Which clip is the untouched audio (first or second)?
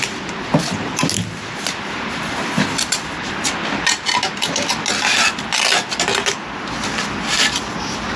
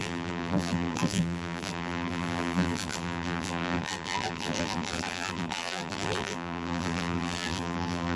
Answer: first